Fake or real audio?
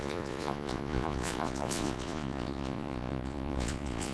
fake